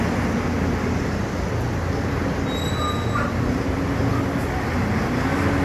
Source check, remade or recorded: recorded